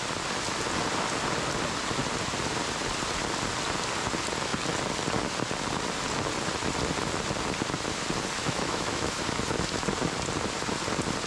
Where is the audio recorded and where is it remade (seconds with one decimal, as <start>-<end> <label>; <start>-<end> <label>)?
0.0-8.4 recorded; 8.4-9.2 remade; 9.2-11.3 recorded